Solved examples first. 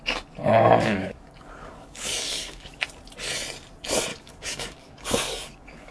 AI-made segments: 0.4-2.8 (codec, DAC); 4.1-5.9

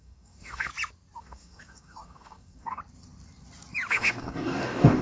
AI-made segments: 0.0-0.7 (codec, DAC); 1.2-2.8; 3.9-5.0